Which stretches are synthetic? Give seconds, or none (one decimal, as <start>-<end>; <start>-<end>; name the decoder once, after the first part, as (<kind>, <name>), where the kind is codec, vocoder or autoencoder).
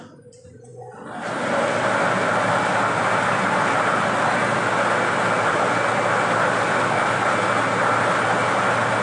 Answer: none